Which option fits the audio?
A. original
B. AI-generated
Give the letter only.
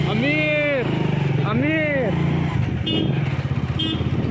A